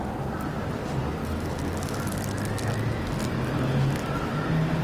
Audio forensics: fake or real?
real